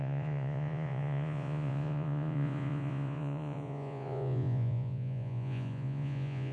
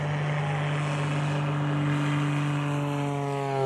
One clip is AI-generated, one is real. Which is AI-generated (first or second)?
first